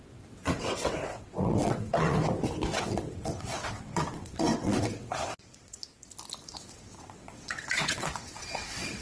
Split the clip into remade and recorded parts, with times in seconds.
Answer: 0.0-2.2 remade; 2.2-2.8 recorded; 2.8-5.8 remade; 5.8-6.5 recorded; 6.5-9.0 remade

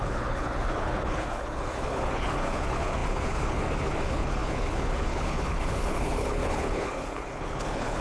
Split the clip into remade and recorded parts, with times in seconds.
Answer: 0.0-8.0 remade

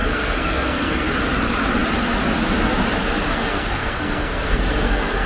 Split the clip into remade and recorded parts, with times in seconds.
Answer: 0.0-1.1 remade; 1.1-3.3 recorded; 3.3-5.3 remade

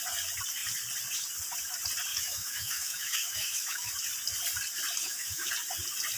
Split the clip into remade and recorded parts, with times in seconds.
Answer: 0.0-2.1 recorded; 2.1-3.9 remade; 3.9-5.0 recorded; 5.0-5.5 remade; 5.5-6.2 recorded

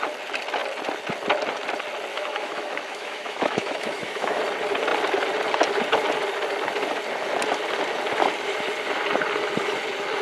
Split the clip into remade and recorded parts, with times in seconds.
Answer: 0.0-2.1 recorded; 2.1-4.4 remade; 4.4-10.2 recorded

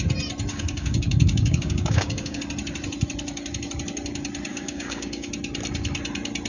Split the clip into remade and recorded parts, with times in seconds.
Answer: 0.0-0.5 recorded; 0.5-2.4 remade; 2.4-4.5 recorded; 4.5-5.3 remade; 5.3-6.5 recorded

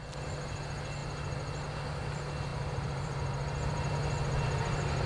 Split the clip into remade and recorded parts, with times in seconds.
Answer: 0.0-2.5 recorded; 2.5-3.9 remade; 3.9-5.1 recorded